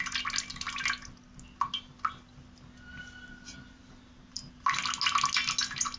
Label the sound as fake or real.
real